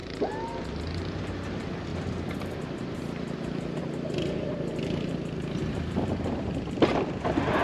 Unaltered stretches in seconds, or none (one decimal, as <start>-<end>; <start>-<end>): 0.0-1.9; 6.5-7.6